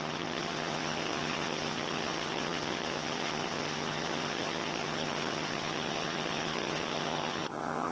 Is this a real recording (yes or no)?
no